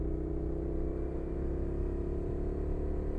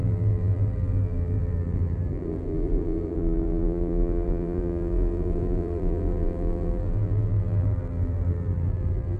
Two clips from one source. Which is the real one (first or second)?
first